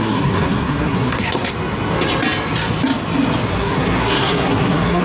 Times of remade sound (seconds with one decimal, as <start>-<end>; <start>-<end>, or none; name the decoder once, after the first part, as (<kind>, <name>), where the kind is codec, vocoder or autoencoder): 0.0-1.5 (codec, SNAC); 3.5-5.0